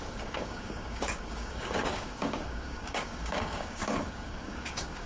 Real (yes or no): no